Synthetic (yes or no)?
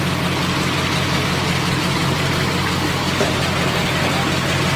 no